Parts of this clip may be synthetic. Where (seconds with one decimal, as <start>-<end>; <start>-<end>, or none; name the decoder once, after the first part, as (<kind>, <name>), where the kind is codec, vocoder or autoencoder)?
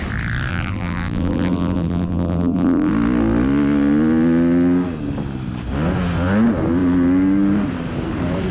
0.5-2.9 (vocoder, BigVGAN v2)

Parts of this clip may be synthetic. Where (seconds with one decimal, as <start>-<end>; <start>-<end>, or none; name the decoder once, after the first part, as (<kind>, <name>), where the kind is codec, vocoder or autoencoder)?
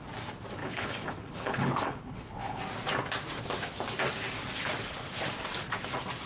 0.6-2.6 (codec, HILCodec)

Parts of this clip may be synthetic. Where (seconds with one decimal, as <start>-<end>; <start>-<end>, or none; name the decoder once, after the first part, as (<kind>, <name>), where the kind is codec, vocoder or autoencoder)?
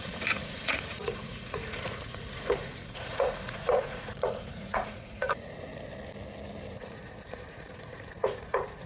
0.0-5.7 (vocoder, Vocos); 6.7-8.9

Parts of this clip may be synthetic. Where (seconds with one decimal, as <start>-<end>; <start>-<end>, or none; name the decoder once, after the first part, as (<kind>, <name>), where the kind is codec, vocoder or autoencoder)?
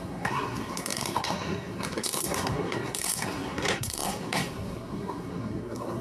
0.0-6.0 (codec, SNAC)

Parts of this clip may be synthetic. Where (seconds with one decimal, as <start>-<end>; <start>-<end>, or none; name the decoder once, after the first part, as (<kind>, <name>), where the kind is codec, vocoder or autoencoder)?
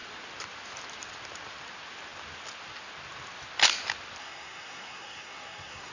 4.2-5.9 (codec, SNAC)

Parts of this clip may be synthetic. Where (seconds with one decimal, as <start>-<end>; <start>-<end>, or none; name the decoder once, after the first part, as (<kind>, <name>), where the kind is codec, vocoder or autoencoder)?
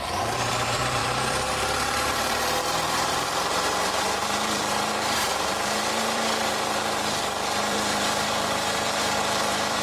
0.0-9.8 (vocoder, BigVGAN v2)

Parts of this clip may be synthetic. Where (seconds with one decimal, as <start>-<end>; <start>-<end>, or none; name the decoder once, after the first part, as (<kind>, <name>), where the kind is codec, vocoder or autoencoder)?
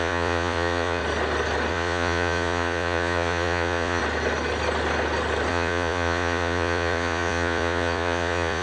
0.0-1.0 (vocoder, Vocos); 1.7-4.0; 5.5-8.6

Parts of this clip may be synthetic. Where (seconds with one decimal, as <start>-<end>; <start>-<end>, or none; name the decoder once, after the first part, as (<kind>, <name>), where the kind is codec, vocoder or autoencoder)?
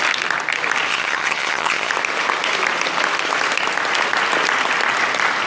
0.9-1.9 (vocoder, HiFi-GAN)